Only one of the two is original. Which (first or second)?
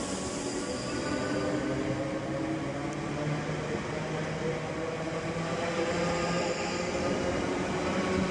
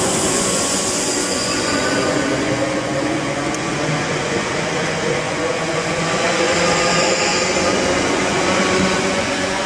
first